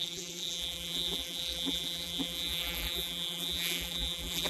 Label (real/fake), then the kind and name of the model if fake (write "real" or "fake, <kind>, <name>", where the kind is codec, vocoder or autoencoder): fake, vocoder, BigVGAN v2